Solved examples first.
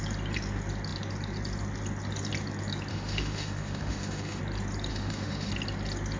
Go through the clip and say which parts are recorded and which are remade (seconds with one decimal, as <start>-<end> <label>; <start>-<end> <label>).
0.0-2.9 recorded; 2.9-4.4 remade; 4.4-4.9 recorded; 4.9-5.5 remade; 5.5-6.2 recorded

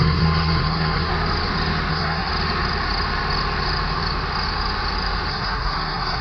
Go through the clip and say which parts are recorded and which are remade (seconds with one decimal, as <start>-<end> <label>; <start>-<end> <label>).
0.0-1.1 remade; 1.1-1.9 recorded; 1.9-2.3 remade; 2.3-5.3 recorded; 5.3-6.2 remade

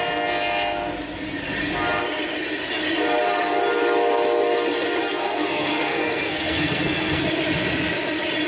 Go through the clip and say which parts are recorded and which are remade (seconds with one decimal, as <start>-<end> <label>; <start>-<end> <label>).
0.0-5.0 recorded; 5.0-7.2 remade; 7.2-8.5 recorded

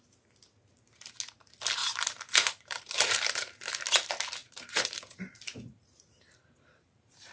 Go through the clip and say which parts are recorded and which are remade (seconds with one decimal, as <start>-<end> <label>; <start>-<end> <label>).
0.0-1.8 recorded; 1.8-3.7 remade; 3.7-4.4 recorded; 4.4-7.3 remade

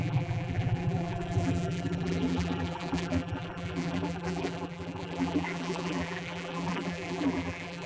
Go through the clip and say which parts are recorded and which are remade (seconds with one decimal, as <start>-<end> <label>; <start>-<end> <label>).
0.0-7.9 remade

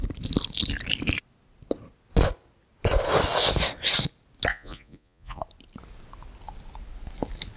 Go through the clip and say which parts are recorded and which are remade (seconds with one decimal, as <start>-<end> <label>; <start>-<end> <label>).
0.0-4.5 recorded; 4.5-5.4 remade; 5.4-7.6 recorded

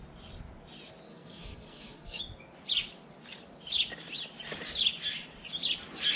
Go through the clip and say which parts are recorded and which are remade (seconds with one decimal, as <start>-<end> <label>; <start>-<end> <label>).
0.0-1.1 recorded; 1.1-2.2 remade; 2.2-6.2 recorded

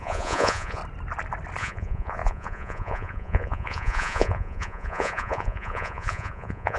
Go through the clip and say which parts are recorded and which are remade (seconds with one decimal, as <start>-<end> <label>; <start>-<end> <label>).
0.0-0.8 remade; 0.8-1.6 recorded; 1.6-6.8 remade